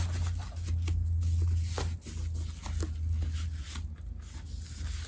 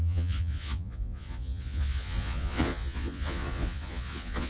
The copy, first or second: second